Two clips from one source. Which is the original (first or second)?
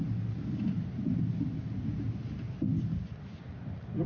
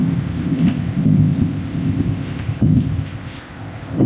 first